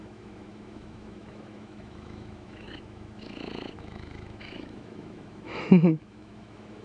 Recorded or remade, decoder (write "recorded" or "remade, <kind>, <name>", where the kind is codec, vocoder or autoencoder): remade, autoencoder, DAC-VAE